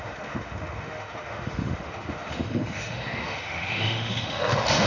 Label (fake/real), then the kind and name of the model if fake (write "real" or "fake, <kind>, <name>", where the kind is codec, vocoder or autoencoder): fake, autoencoder, DAC-VAE